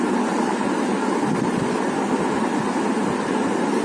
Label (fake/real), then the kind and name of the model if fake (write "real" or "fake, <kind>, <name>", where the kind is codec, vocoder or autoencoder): real